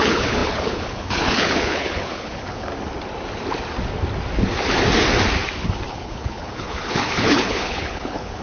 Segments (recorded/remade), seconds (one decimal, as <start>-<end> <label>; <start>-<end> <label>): 0.0-2.7 remade; 2.7-5.9 recorded; 5.9-8.4 remade